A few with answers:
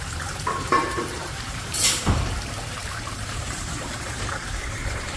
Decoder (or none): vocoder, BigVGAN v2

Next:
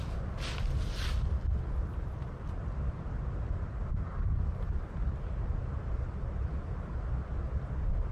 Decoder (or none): none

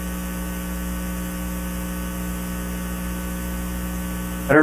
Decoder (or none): none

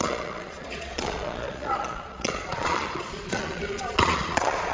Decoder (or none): vocoder, Vocos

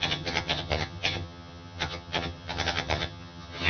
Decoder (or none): vocoder, HiFi-GAN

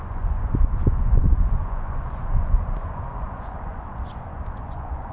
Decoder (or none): vocoder, Vocos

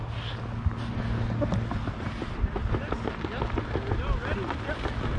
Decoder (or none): none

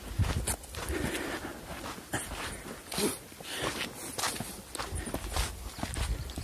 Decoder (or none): none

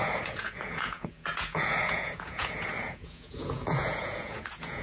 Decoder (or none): vocoder, Vocos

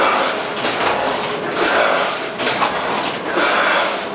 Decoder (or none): none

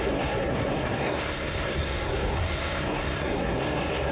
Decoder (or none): codec, SNAC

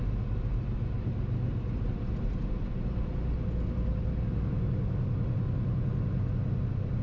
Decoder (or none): none